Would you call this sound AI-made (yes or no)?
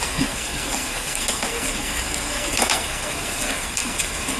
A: yes